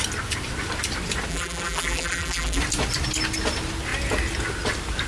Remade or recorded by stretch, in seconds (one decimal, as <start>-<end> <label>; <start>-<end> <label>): 0.0-1.3 recorded; 1.3-2.6 remade; 2.6-5.1 recorded